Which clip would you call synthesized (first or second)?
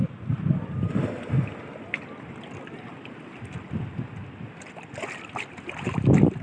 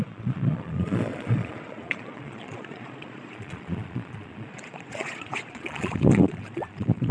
second